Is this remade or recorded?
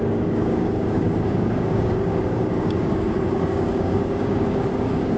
remade